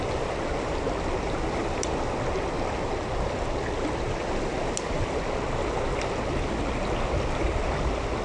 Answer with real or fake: real